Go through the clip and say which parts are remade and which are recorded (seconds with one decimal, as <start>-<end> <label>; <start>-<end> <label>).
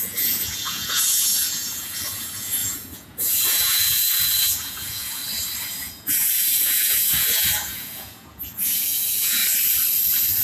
0.0-5.2 remade; 5.2-5.8 recorded; 5.8-9.4 remade; 9.4-10.4 recorded